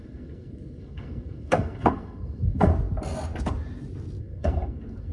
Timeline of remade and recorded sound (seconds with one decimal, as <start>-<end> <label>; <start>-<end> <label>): 0.0-2.7 remade; 2.7-4.2 recorded; 4.2-5.1 remade